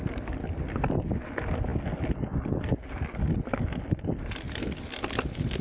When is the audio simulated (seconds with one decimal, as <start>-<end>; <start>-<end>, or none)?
none